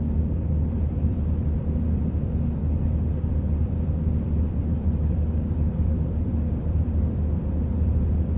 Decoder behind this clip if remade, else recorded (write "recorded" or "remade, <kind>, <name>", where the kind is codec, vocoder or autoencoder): remade, vocoder, BigVGAN v2